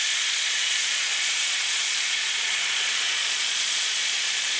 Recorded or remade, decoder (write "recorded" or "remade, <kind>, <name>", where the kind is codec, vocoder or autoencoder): remade, vocoder, Vocos